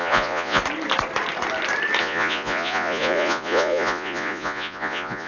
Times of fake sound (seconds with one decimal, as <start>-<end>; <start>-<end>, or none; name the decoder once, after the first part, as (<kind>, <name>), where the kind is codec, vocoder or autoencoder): 0.0-0.6 (vocoder, Vocos); 2.0-5.3